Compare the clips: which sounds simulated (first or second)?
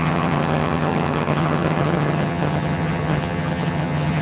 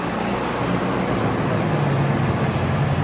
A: first